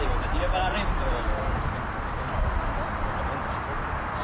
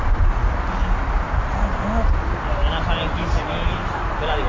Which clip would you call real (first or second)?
second